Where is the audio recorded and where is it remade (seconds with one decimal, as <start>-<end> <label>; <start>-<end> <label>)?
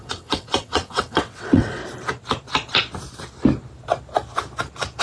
0.0-1.8 remade; 1.8-5.0 recorded